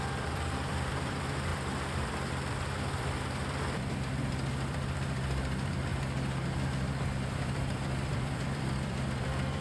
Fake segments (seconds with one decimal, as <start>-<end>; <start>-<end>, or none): 0.0-5.9; 7.3-9.6